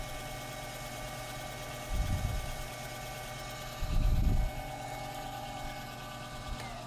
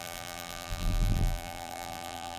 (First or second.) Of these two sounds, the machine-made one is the second